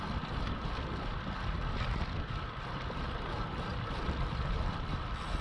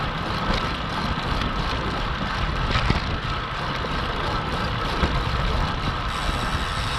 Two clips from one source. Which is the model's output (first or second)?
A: first